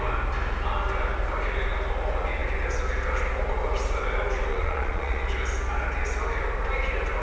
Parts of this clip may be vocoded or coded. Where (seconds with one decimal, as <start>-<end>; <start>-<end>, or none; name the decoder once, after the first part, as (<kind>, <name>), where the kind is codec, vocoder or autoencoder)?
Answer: 4.5-5.2 (vocoder, Vocos)